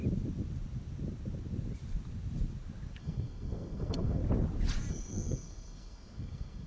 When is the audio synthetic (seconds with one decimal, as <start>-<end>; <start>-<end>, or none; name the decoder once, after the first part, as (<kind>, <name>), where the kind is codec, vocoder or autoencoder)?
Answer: 3.0-4.2 (codec, SNAC); 4.9-6.7